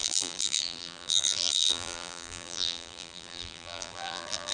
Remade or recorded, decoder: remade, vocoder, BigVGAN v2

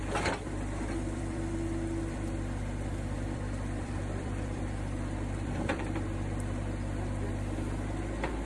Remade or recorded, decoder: remade, vocoder, BigVGAN v2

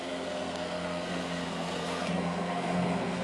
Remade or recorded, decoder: remade, codec, SNAC